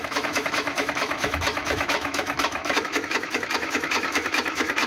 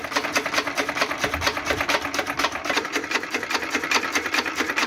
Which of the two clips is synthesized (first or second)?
first